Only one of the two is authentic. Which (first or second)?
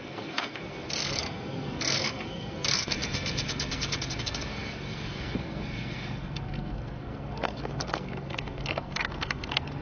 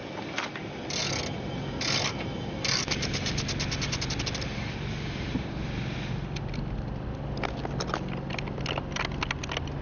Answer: second